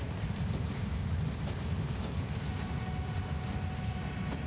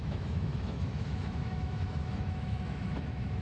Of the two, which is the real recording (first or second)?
first